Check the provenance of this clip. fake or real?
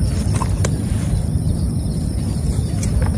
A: real